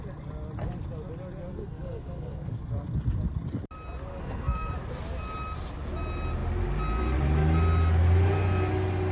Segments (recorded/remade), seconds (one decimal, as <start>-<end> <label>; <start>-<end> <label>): 0.0-1.5 recorded; 1.5-2.7 remade; 2.7-4.1 recorded; 4.1-4.7 remade; 4.7-9.1 recorded